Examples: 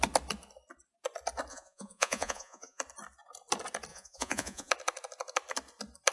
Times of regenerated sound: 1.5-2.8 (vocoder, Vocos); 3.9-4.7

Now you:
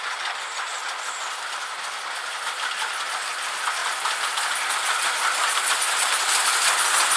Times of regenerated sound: none

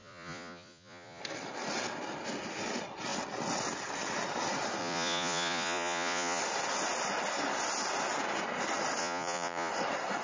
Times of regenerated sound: 0.0-1.2 (vocoder, Vocos); 4.8-6.4; 9.0-9.7

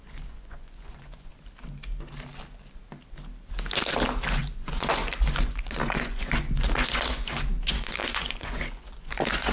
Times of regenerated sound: 0.0-1.3 (vocoder, Vocos); 4.3-9.5

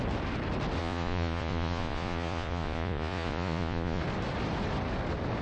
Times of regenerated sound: 0.8-4.0 (vocoder, Vocos)

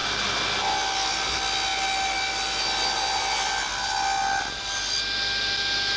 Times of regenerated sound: none

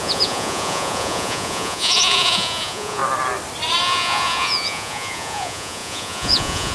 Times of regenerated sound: 0.0-3.0 (vocoder, Vocos); 3.8-6.7

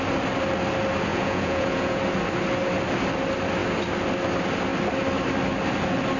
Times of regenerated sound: 1.1-2.0 (vocoder, Vocos)